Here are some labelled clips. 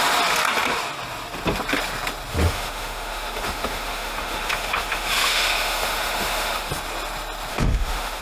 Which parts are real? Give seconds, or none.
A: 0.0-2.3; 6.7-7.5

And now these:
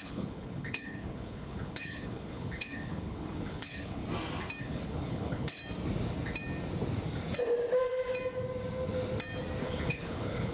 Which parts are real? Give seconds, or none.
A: 4.0-4.6; 5.6-9.6

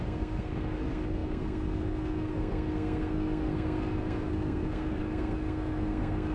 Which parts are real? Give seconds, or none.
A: none

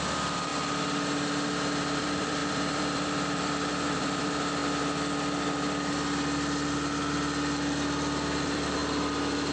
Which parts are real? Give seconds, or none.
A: 0.5-2.0; 4.6-8.4; 8.8-9.5

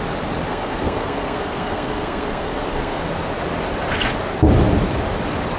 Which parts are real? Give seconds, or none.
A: 0.0-0.5; 3.0-5.6

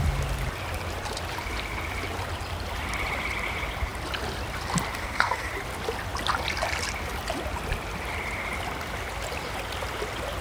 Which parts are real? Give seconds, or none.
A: 0.0-5.0; 5.5-10.4